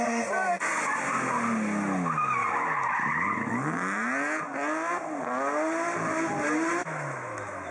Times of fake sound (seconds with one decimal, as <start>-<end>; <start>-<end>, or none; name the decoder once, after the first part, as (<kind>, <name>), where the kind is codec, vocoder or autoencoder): 6.8-7.7 (autoencoder, DAC-VAE)